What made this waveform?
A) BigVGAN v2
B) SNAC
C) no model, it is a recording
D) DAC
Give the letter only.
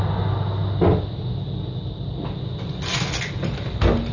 C